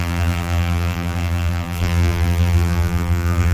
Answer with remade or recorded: remade